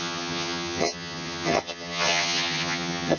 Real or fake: fake